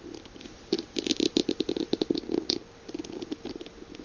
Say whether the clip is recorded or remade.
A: remade